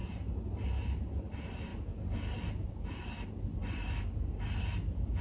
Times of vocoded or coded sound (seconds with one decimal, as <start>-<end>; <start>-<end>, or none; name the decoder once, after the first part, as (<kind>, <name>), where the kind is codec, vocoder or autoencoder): none